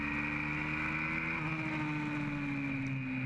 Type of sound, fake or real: real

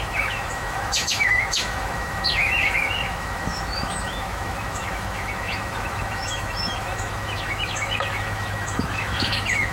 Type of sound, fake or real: fake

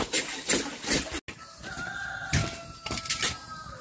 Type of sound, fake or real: real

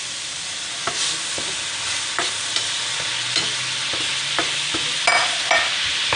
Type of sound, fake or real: real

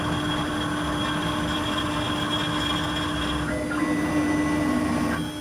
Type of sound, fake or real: real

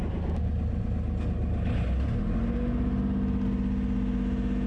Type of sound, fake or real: real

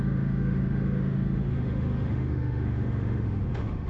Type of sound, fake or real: fake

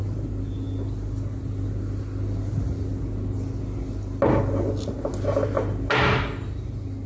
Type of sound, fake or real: real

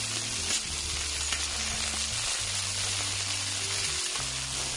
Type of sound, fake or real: real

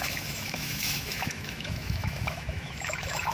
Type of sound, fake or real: fake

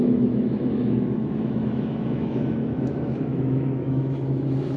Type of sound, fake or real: fake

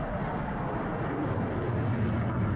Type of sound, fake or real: real